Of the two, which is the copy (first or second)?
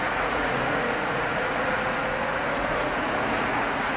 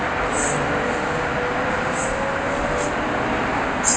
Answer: first